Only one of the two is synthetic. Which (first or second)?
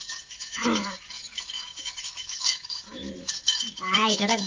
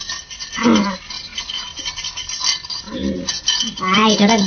first